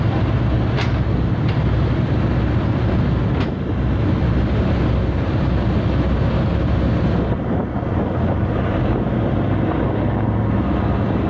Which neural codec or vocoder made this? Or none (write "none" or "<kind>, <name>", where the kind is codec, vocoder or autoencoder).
none